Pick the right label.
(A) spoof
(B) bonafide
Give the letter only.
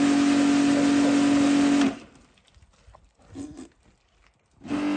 B